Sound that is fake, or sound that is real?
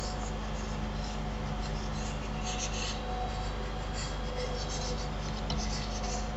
real